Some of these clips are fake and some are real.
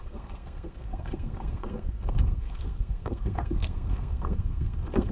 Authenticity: fake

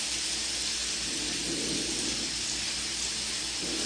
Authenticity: real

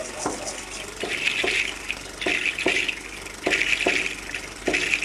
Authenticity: real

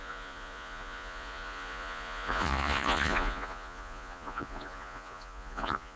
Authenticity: fake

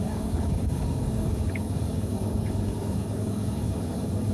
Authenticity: fake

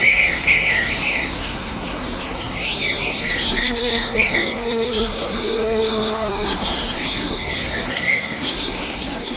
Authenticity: fake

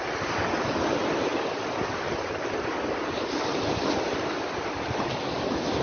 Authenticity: real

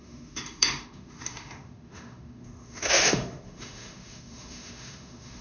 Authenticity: fake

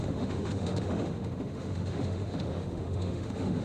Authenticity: fake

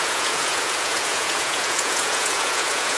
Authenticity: fake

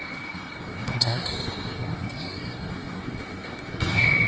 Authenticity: fake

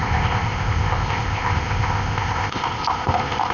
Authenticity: fake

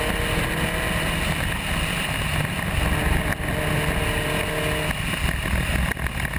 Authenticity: real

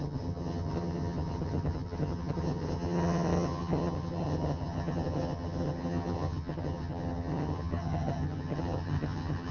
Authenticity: fake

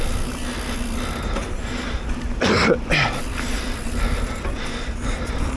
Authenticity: real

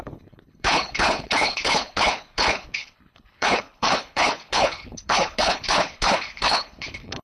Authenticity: fake